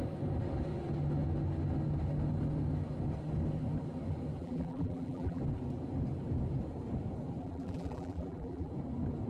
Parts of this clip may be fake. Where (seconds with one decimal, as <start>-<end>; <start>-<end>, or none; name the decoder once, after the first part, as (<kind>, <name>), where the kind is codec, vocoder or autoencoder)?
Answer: 4.4-5.4 (vocoder, BigVGAN v2); 7.4-8.7